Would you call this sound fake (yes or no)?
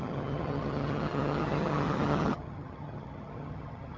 yes